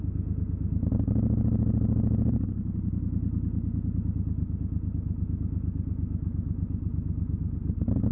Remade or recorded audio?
recorded